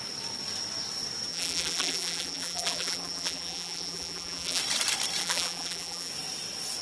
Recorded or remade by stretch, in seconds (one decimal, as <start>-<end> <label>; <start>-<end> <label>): 0.0-1.3 recorded; 1.3-4.6 remade; 4.6-5.2 recorded; 5.2-6.1 remade; 6.1-6.8 recorded